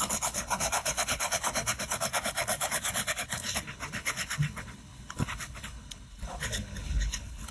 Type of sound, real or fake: fake